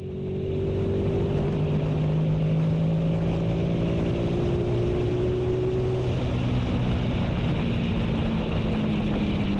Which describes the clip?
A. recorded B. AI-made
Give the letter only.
A